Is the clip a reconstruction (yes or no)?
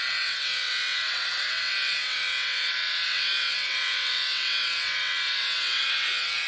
yes